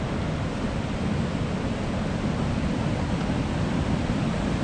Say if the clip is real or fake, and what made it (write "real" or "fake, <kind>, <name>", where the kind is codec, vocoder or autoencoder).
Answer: real